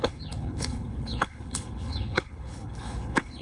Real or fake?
fake